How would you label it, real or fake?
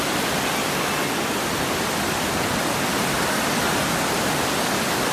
real